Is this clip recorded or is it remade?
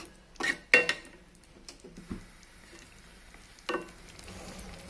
recorded